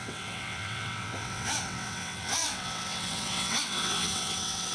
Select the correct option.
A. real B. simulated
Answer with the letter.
B